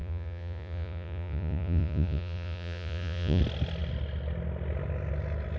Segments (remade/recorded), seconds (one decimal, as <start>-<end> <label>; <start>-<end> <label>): 0.0-3.4 remade; 3.4-5.6 recorded